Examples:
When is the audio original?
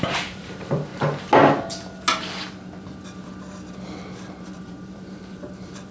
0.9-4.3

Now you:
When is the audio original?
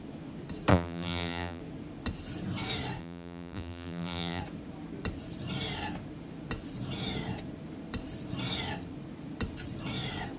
0.0-0.7; 1.6-3.0; 4.4-10.4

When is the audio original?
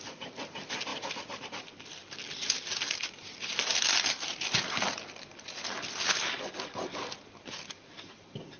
0.0-0.9; 3.0-8.6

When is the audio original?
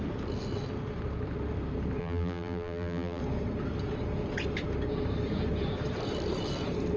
0.0-2.0; 3.2-7.0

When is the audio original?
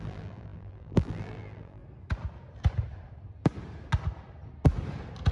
1.8-5.3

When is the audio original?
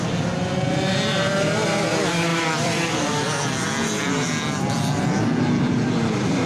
0.0-2.3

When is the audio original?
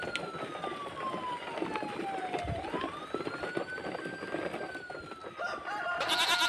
0.0-6.5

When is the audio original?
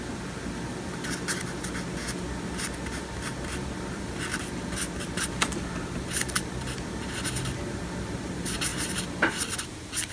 0.0-8.7; 9.3-10.1